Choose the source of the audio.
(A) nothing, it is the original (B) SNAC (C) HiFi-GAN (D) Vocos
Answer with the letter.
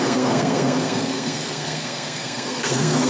B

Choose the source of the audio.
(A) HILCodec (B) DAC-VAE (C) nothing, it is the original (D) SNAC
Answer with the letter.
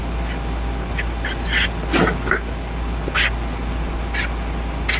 C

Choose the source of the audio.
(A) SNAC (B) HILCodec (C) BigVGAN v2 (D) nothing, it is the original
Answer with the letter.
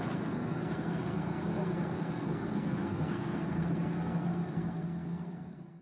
A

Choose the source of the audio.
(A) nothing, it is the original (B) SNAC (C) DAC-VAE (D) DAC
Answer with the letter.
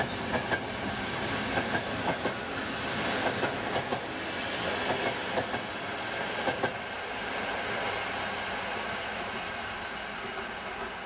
A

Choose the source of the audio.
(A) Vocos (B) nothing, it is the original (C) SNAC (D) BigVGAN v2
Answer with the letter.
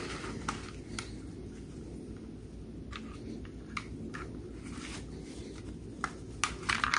B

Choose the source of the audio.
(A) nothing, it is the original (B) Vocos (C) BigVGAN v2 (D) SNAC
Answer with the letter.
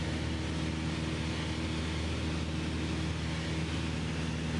A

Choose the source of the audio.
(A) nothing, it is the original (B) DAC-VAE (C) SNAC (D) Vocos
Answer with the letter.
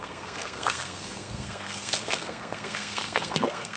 C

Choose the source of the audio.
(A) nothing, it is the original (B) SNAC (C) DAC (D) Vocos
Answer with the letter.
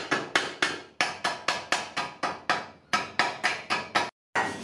A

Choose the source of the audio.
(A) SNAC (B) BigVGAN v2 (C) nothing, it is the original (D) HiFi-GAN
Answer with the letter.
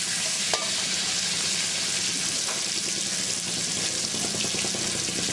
C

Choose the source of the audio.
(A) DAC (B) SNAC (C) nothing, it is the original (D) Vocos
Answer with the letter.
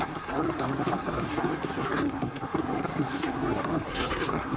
B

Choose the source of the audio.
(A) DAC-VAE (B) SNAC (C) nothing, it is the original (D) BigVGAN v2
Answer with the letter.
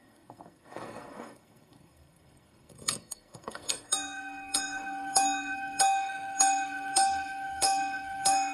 B